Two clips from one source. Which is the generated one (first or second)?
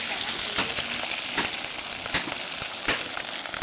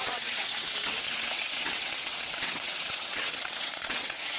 second